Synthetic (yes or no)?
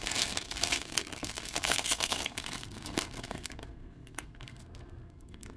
yes